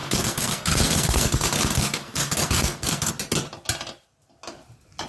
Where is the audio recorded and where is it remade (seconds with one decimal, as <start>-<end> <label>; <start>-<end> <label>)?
0.0-3.1 remade; 3.1-5.1 recorded